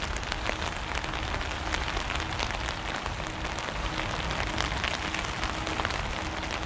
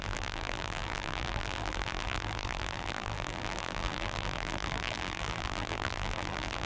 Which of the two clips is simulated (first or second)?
second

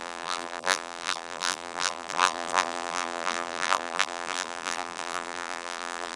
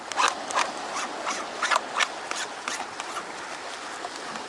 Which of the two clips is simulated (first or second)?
first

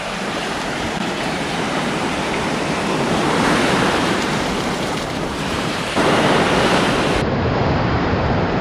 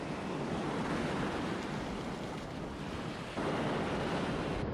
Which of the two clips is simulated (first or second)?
first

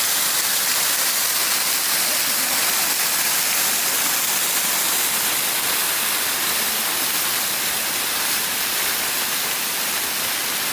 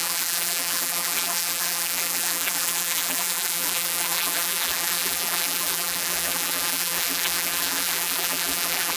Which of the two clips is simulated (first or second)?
second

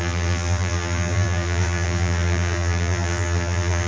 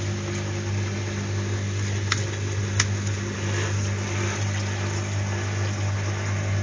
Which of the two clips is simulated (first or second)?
first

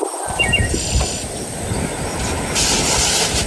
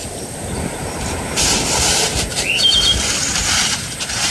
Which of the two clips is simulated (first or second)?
second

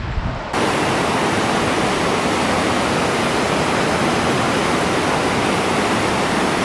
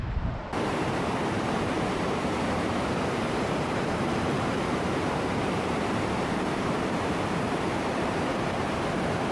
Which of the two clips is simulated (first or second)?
second